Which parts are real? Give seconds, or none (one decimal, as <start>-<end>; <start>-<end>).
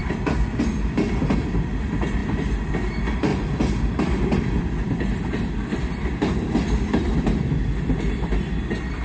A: 0.0-9.0